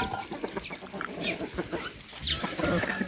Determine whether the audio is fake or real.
real